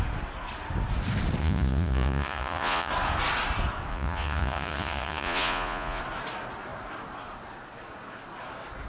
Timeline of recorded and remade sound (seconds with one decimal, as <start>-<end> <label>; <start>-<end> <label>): 0.0-1.4 recorded; 1.4-2.9 remade; 2.9-3.9 recorded; 3.9-6.0 remade; 6.0-8.9 recorded